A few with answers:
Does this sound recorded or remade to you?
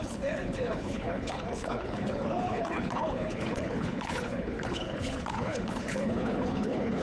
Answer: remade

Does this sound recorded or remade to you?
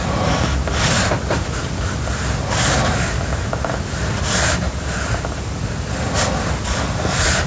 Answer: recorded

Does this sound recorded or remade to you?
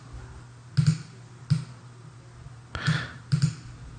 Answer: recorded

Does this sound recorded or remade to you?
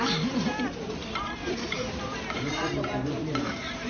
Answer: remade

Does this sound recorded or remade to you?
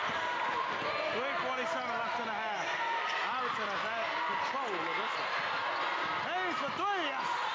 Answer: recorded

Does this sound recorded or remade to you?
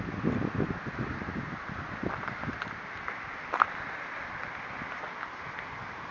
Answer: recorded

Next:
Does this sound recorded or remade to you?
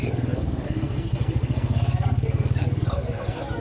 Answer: remade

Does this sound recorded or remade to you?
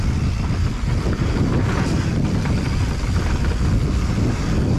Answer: recorded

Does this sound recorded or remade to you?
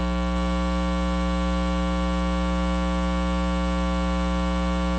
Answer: recorded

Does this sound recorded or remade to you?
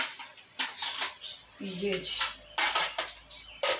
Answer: recorded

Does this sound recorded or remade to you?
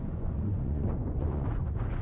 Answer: remade